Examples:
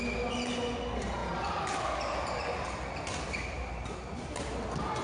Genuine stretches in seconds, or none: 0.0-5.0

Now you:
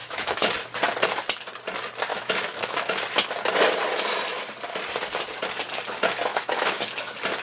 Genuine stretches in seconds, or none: 0.5-2.1; 3.0-6.3; 6.8-7.4

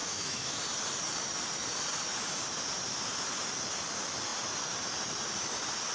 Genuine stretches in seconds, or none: 0.6-5.9

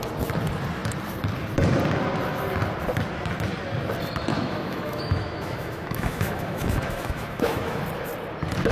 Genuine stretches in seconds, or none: 0.0-4.3; 7.8-8.7

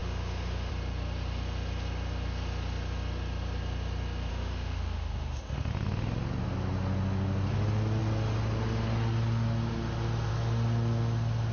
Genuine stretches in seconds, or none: 0.7-4.3; 5.7-11.5

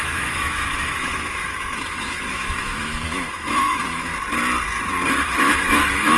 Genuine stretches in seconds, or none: 4.1-5.1

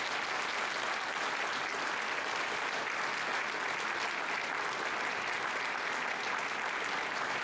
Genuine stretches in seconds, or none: 0.0-7.4

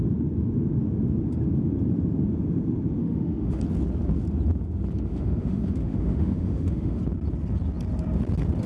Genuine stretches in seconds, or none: 0.0-3.0; 3.6-5.1; 7.0-8.7